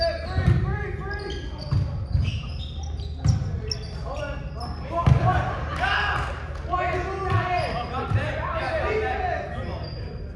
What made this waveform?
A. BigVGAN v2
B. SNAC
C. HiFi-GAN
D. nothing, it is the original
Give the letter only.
D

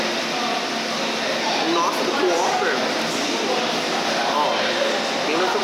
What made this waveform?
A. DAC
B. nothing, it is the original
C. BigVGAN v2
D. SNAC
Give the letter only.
B